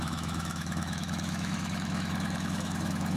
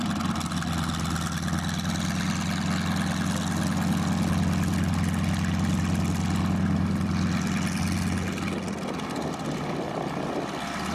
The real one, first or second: second